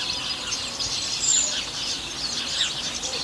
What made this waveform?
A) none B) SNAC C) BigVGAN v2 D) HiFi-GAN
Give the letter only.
A